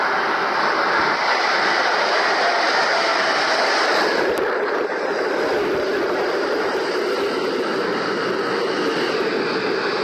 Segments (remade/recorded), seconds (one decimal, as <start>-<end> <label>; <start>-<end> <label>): 0.0-3.1 recorded; 3.1-5.3 remade; 5.3-10.0 recorded